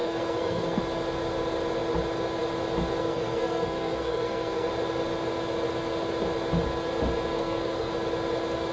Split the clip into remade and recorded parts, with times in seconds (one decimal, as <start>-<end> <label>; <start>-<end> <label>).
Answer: 0.0-0.8 remade; 0.8-3.0 recorded; 3.0-4.7 remade; 4.7-7.3 recorded; 7.3-7.9 remade; 7.9-8.7 recorded